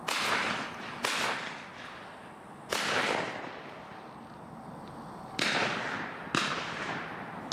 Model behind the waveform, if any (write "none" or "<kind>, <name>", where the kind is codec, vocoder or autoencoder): none